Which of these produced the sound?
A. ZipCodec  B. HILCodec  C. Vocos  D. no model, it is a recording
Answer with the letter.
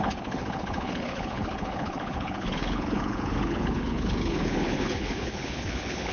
B